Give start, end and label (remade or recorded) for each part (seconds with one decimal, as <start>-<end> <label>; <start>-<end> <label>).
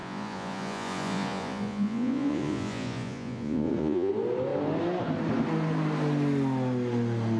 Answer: 0.0-4.1 remade; 4.1-7.4 recorded